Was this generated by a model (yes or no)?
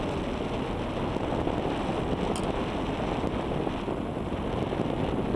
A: no